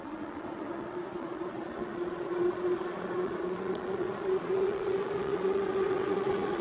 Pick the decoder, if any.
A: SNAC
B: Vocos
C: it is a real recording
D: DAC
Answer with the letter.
B